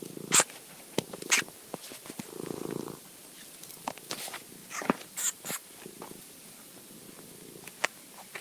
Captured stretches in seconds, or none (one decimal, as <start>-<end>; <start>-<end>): 0.0-2.0; 3.4-8.4